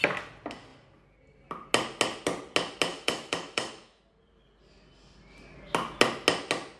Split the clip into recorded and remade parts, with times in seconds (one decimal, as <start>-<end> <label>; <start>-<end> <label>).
0.0-2.9 recorded; 2.9-4.0 remade; 4.0-6.8 recorded

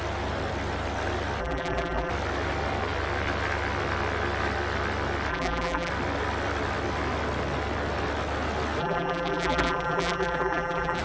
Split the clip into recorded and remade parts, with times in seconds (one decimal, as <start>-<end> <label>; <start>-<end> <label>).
0.0-1.4 recorded; 1.4-2.1 remade; 2.1-5.3 recorded; 5.3-5.9 remade; 5.9-8.8 recorded; 8.8-11.0 remade

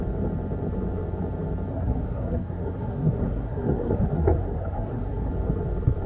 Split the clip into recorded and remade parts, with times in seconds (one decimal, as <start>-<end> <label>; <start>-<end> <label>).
0.0-1.7 recorded; 1.7-5.3 remade; 5.3-6.1 recorded

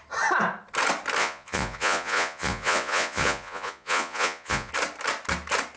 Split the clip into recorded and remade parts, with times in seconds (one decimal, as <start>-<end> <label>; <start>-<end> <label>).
0.0-1.2 recorded; 1.2-4.7 remade; 4.7-5.8 recorded

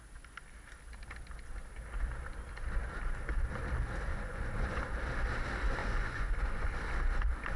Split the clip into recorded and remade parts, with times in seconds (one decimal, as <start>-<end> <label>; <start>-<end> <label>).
0.0-4.1 recorded; 4.1-4.8 remade; 4.8-5.8 recorded; 5.8-6.7 remade; 6.7-7.6 recorded

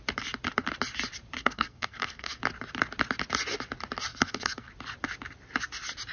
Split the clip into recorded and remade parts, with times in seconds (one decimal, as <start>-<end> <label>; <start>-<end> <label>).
0.0-1.4 recorded; 1.4-2.4 remade; 2.4-4.1 recorded; 4.1-4.7 remade; 4.7-6.1 recorded

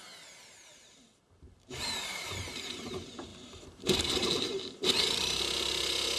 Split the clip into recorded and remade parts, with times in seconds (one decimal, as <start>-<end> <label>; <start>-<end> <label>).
0.0-2.0 recorded; 2.0-2.9 remade; 2.9-3.3 recorded; 3.3-5.4 remade; 5.4-6.2 recorded